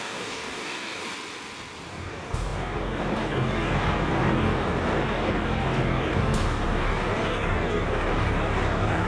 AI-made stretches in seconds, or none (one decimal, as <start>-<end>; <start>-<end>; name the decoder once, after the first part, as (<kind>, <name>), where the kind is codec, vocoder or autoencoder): 0.0-1.0 (codec, DAC); 1.9-9.1